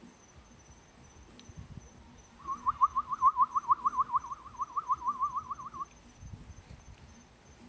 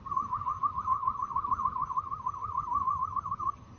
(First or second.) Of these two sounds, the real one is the first